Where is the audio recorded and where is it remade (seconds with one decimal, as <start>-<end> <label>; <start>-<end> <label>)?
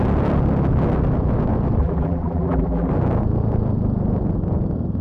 0.0-1.8 recorded; 1.8-2.9 remade; 2.9-5.0 recorded